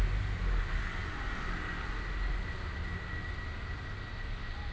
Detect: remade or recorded recorded